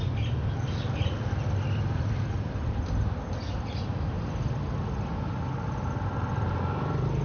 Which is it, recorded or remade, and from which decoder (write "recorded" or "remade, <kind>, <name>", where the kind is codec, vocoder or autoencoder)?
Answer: recorded